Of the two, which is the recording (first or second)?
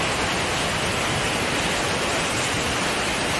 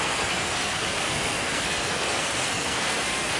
first